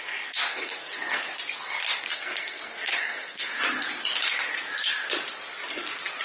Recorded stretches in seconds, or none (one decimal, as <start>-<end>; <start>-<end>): 0.0-0.5; 1.3-2.0; 3.6-6.2